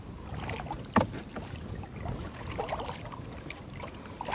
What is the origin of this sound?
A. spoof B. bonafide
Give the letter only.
B